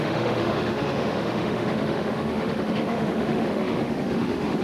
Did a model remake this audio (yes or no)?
yes